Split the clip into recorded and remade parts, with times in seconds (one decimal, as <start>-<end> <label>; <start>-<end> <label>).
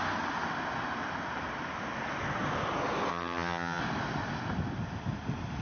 0.0-3.1 recorded; 3.1-3.8 remade; 3.8-5.6 recorded